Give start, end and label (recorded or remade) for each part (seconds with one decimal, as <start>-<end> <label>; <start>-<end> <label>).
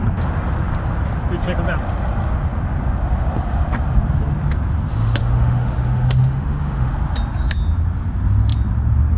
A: 0.0-4.9 recorded; 4.9-6.9 remade; 6.9-9.2 recorded